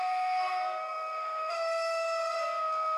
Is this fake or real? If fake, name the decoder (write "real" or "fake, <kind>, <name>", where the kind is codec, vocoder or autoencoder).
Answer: fake, codec, SNAC